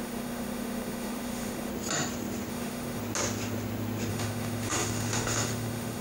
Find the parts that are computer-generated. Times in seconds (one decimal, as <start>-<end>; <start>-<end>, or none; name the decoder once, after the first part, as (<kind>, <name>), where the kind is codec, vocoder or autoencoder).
0.0-1.7 (autoencoder, DAC-VAE); 2.5-3.0; 4.1-6.0